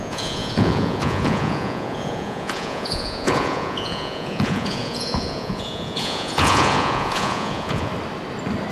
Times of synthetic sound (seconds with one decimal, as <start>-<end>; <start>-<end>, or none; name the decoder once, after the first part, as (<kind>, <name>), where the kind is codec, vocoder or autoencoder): 0.0-7.9 (vocoder, Vocos)